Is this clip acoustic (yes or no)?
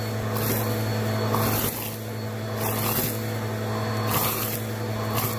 yes